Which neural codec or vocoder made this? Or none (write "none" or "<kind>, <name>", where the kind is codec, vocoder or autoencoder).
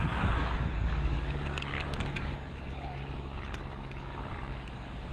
codec, DAC